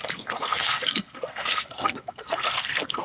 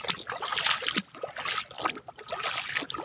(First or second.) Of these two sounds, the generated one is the first